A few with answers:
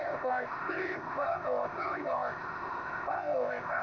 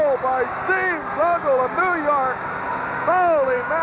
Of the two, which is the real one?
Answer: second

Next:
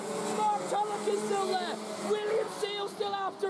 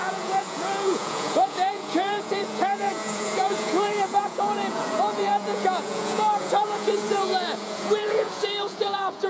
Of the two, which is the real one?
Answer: first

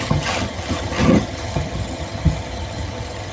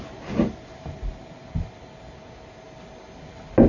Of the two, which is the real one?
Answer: second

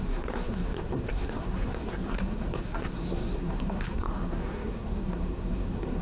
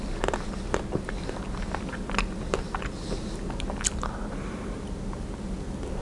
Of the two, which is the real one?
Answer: second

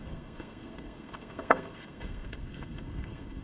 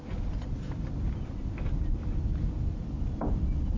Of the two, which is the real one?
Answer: second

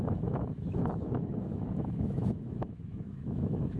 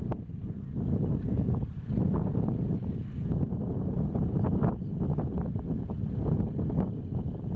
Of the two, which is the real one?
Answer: second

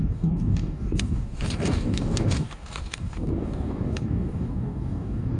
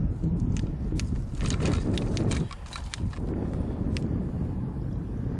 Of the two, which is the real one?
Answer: second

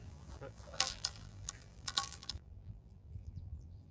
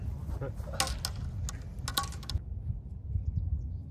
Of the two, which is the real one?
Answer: second